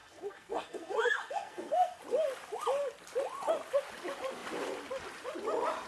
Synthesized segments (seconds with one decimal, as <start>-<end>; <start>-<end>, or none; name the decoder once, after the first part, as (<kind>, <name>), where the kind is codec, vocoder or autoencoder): 0.0-2.0 (codec, SNAC)